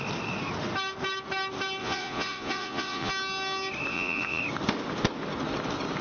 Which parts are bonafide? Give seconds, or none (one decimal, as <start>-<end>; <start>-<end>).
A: 0.0-1.8; 3.1-3.9; 4.4-6.0